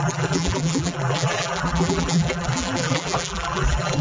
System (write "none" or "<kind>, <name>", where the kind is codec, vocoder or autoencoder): vocoder, BigVGAN v2